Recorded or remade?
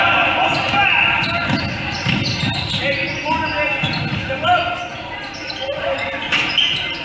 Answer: recorded